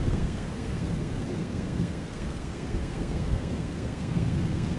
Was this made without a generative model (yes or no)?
no